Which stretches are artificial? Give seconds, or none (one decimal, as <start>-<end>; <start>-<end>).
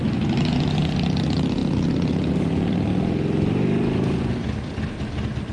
none